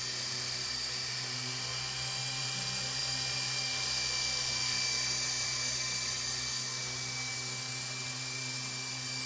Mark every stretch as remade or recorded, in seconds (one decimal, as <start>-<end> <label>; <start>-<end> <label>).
0.0-9.3 recorded